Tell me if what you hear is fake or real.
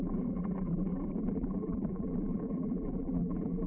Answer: fake